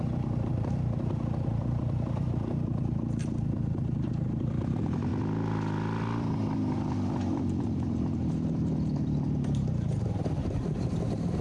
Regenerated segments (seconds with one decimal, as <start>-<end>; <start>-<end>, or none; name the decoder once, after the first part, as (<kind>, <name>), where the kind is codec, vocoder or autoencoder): 0.0-5.1 (vocoder, BigVGAN v2); 7.6-11.4